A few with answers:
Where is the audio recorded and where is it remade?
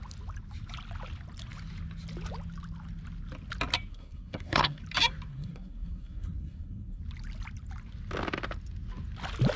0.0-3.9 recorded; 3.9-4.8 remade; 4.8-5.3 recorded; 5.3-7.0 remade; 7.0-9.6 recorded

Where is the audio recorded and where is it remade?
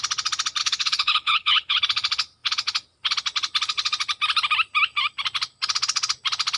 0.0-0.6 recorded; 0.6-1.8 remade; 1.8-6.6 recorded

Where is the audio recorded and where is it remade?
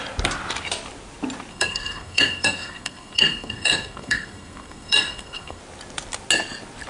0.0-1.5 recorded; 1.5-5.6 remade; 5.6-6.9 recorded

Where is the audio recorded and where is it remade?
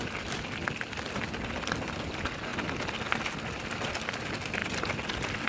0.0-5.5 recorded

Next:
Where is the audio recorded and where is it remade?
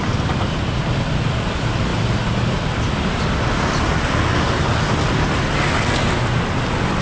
0.0-7.0 recorded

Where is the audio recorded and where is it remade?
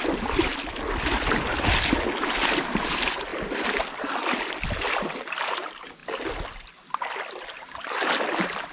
0.0-8.7 recorded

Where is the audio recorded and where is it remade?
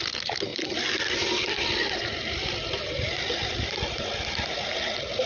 0.0-5.3 recorded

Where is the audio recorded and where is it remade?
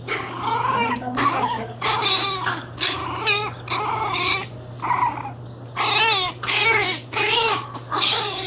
0.0-3.0 remade; 3.0-3.9 recorded; 3.9-4.3 remade; 4.3-6.0 recorded; 6.0-8.5 remade